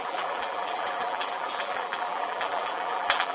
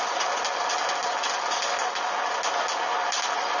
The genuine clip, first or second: second